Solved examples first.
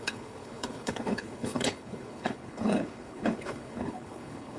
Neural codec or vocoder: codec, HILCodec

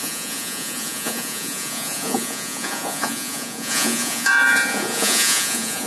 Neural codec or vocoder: vocoder, Vocos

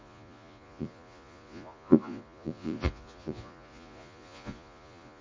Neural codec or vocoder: vocoder, Vocos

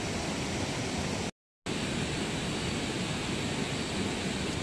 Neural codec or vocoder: none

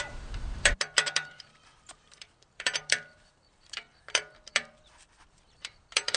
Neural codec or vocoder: vocoder, BigVGAN v2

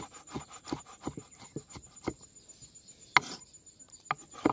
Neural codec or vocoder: none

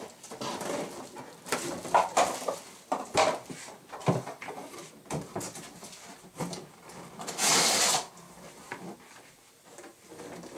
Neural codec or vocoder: none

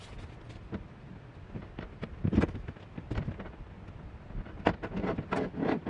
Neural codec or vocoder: none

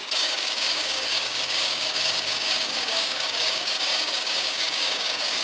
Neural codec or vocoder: codec, DAC